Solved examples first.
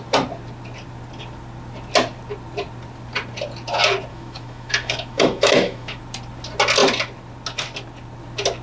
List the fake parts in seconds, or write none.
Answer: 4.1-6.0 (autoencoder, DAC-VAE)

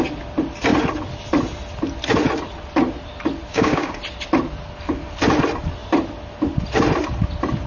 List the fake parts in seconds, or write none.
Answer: 3.5-4.0 (codec, DAC)

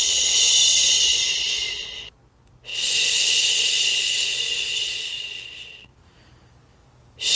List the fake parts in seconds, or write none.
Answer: none

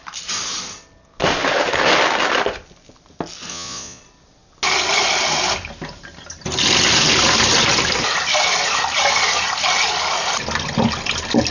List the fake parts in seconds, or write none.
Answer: 3.5-4.0 (vocoder, Vocos)

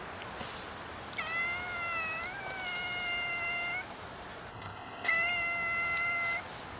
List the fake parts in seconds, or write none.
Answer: 4.5-5.1 (codec, ZipCodec)

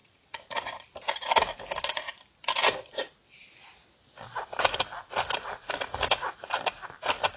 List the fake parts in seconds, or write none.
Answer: 0.0-0.8 (vocoder, Vocos); 5.9-6.5

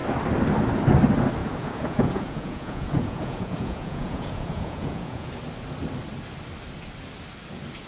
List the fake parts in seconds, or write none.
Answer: 1.4-5.3 (vocoder, Vocos)

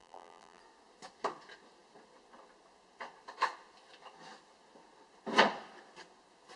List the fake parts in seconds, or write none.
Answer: 0.0-0.6 (vocoder, BigVGAN v2)